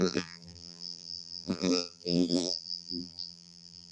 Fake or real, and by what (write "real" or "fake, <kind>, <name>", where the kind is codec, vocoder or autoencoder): fake, vocoder, BigVGAN v2